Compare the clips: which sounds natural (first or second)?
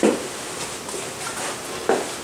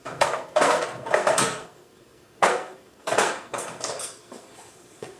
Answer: first